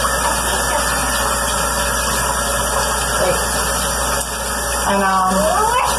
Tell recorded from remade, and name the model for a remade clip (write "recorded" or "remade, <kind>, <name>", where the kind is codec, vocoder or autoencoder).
recorded